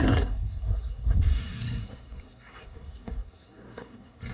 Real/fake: fake